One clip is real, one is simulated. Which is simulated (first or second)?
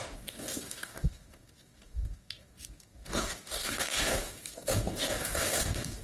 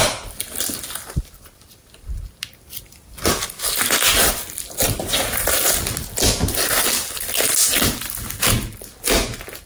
first